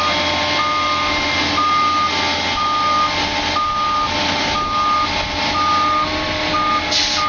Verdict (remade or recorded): recorded